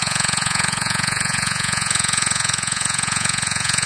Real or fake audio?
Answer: fake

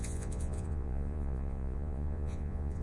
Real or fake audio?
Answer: fake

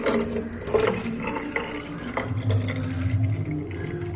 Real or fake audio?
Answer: real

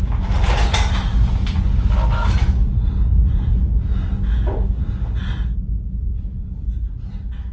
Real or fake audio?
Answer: real